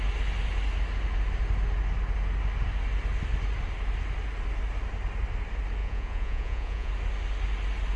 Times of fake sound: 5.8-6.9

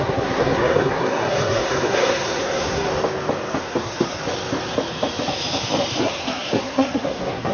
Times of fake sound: 0.0-2.9; 3.6-4.2; 6.0-7.5

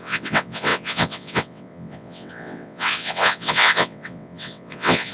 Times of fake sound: 0.0-5.1